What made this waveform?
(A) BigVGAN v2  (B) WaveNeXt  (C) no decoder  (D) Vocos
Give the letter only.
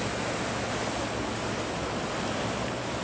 C